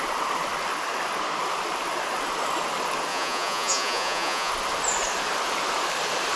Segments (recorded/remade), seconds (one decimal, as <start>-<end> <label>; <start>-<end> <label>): 0.0-3.1 recorded; 3.1-4.5 remade; 4.5-6.4 recorded